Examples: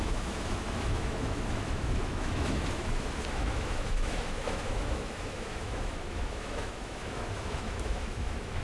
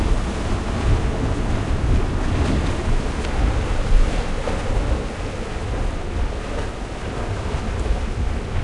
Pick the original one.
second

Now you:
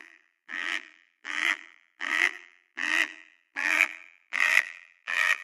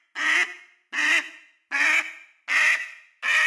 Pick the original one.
second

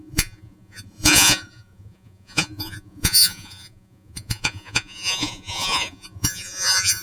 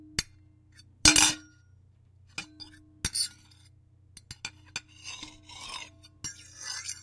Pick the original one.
second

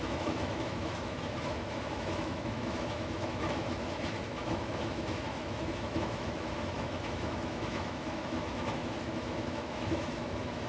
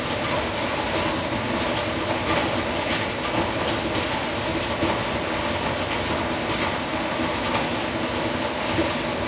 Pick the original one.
second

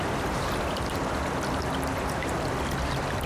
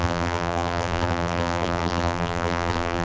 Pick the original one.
first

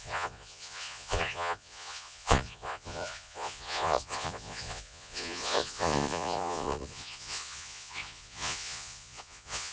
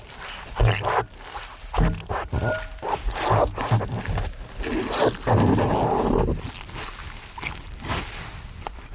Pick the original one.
second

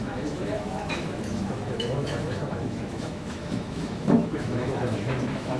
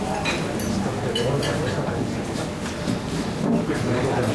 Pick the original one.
second